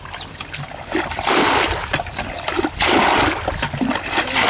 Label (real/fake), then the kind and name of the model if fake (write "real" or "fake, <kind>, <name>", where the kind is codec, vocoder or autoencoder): real